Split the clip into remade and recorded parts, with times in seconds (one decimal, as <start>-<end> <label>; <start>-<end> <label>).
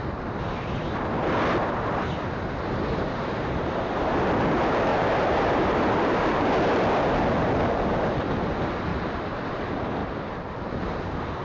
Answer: 0.0-4.9 recorded; 4.9-6.5 remade; 6.5-8.9 recorded; 8.9-9.4 remade; 9.4-11.4 recorded